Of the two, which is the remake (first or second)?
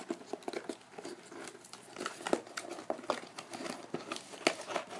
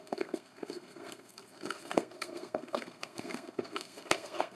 second